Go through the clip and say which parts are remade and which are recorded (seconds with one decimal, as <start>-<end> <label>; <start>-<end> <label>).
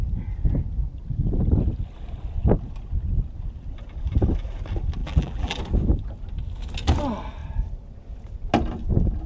0.0-5.0 recorded; 5.0-5.6 remade; 5.6-9.3 recorded